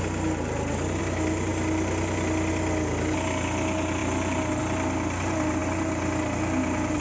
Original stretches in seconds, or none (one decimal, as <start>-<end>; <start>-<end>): 0.0-7.0